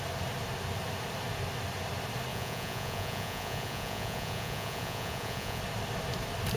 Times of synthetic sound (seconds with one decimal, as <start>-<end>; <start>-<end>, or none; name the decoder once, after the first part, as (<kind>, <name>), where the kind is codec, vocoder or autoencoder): 2.3-5.6 (vocoder, Vocos)